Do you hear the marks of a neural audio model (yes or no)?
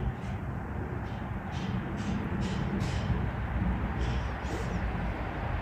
yes